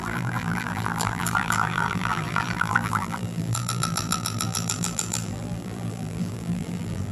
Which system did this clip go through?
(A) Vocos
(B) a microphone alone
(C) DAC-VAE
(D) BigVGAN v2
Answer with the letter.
D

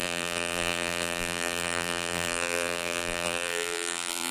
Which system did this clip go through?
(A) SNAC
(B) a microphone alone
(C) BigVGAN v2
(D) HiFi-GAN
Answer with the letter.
C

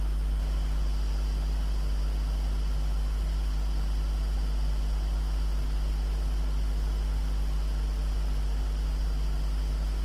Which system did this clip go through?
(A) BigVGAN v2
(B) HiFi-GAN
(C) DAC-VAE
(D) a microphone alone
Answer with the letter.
D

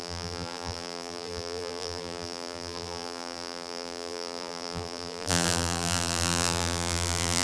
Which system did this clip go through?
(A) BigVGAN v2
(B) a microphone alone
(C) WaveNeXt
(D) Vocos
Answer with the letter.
A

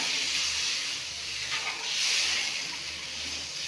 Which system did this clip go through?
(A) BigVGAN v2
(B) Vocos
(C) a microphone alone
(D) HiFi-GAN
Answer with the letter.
C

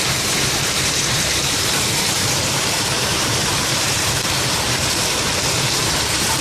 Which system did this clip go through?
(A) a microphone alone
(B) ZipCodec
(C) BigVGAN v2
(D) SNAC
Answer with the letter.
C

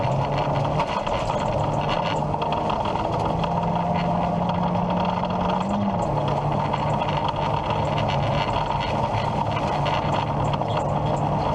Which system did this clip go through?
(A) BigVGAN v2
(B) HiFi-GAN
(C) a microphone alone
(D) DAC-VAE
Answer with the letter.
C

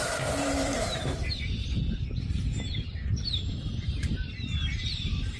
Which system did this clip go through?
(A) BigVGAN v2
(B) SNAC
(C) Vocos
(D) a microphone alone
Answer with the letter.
A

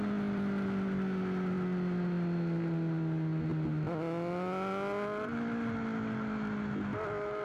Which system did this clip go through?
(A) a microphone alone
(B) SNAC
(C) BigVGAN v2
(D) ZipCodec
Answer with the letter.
A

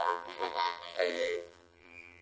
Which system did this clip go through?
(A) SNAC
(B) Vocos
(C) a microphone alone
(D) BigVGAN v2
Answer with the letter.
D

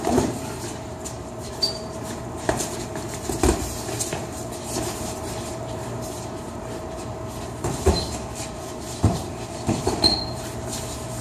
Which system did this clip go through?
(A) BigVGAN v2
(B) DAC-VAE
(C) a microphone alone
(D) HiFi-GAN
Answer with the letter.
A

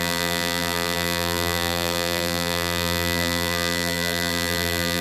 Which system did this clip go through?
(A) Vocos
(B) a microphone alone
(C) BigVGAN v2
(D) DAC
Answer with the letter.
C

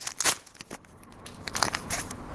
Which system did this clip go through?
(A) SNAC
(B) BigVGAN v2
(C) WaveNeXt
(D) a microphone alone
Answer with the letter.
B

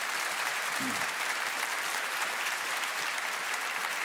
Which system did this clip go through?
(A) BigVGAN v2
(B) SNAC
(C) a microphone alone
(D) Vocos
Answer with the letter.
A